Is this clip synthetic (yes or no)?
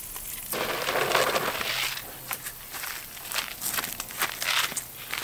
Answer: no